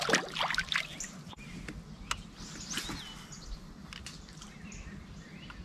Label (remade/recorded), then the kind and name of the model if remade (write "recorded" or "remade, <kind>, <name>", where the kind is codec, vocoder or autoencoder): recorded